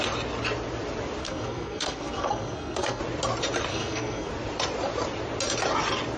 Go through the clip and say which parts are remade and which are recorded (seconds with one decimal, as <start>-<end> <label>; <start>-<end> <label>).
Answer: 0.0-1.2 recorded; 1.2-3.0 remade; 3.0-3.7 recorded; 3.7-4.3 remade; 4.3-6.2 recorded